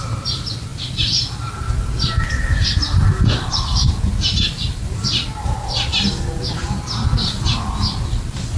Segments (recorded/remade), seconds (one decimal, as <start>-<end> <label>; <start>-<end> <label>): 0.0-8.6 recorded